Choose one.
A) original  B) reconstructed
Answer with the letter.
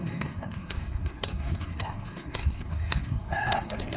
B